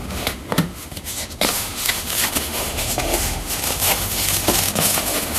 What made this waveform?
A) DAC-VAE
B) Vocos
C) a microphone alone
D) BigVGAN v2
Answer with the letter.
A